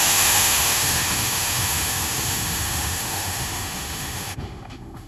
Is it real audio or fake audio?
fake